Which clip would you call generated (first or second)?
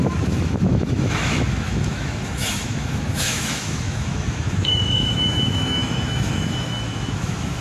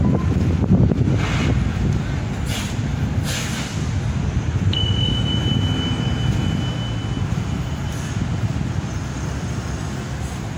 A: first